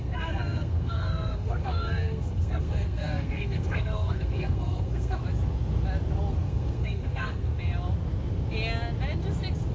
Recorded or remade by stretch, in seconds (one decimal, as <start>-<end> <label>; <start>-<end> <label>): 0.0-5.2 remade; 5.2-6.3 recorded; 6.3-7.5 remade; 7.5-9.7 recorded